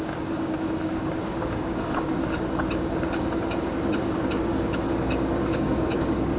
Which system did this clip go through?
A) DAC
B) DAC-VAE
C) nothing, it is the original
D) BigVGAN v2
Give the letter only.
A